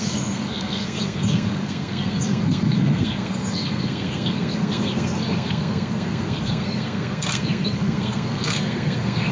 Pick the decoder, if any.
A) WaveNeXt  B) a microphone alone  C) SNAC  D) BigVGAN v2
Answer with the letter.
C